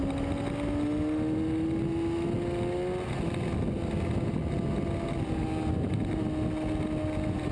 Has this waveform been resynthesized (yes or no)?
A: no